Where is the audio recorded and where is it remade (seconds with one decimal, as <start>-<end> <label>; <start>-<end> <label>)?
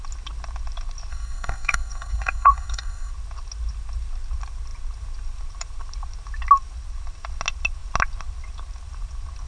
0.0-1.1 recorded; 1.1-3.1 remade; 3.1-9.5 recorded